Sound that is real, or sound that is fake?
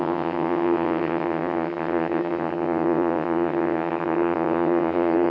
fake